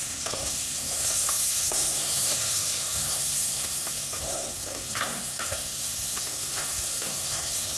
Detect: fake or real fake